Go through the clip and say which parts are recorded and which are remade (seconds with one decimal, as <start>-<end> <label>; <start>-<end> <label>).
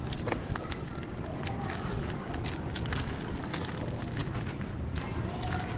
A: 0.0-5.8 recorded